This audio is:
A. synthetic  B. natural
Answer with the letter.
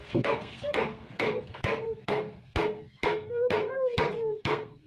A